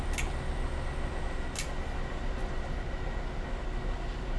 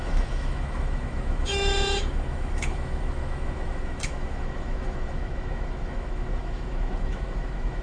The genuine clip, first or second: first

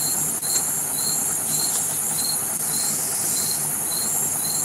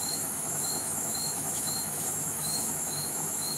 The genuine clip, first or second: first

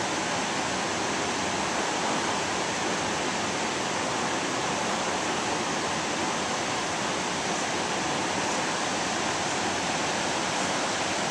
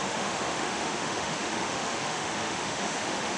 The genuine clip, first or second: first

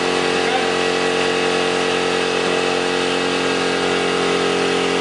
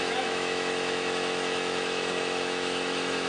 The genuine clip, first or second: first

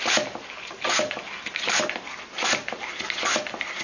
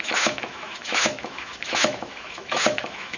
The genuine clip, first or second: first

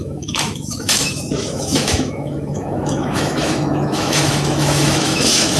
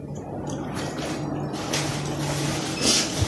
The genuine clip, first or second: second